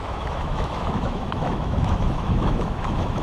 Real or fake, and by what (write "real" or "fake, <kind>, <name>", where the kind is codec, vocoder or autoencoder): fake, autoencoder, DAC-VAE